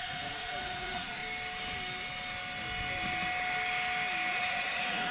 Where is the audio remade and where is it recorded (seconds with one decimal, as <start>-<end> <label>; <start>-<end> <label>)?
0.0-1.2 remade; 1.2-4.3 recorded; 4.3-5.1 remade